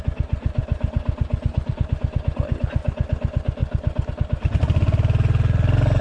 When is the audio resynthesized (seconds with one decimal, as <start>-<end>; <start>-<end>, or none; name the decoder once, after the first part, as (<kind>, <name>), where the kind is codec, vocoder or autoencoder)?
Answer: none